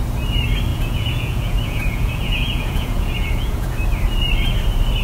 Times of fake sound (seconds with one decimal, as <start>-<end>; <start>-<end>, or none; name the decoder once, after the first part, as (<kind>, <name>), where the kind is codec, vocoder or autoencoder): 0.7-3.7 (vocoder, Vocos)